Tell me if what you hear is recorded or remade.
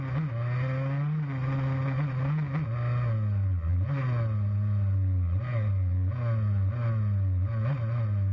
recorded